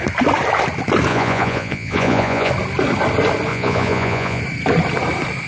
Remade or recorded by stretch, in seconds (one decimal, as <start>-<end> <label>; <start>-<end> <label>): 0.0-1.1 recorded; 1.1-2.5 remade; 2.5-3.5 recorded; 3.5-4.4 remade; 4.4-5.5 recorded